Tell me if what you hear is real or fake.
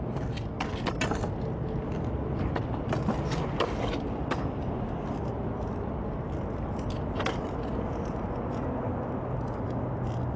real